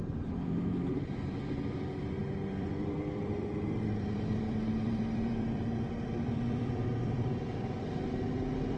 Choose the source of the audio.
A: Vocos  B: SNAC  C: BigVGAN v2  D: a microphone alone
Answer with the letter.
C